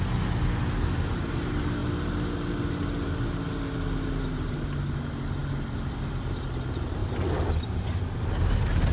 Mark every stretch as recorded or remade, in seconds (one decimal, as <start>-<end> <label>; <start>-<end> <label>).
0.0-7.0 recorded; 7.0-8.3 remade; 8.3-8.9 recorded